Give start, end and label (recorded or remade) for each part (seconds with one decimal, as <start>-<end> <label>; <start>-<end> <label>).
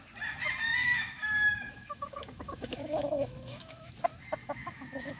0.0-0.8 recorded; 0.8-3.9 remade; 3.9-4.4 recorded; 4.4-5.2 remade